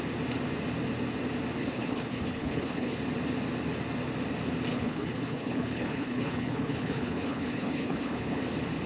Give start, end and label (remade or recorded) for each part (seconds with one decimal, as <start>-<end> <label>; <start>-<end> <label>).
0.0-1.6 recorded; 1.6-3.0 remade; 3.0-4.7 recorded; 4.7-8.4 remade; 8.4-8.9 recorded